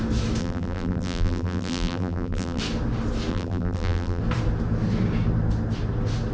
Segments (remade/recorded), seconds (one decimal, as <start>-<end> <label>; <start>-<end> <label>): 0.0-0.4 recorded; 0.4-2.6 remade; 2.6-3.3 recorded; 3.3-4.2 remade; 4.2-6.3 recorded